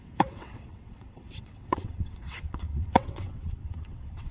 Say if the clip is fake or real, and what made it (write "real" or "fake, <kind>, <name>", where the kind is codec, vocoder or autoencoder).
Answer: fake, vocoder, WaveNeXt